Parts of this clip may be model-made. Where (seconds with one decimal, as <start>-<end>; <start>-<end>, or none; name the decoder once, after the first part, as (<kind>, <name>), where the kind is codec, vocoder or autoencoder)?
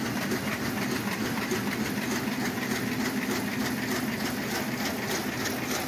none